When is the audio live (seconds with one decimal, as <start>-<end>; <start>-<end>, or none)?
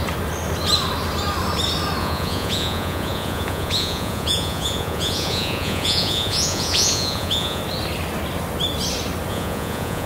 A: 0.0-2.0; 7.6-9.3